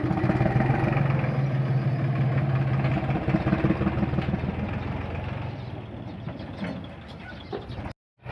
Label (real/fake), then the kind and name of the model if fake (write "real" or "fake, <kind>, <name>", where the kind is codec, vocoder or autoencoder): real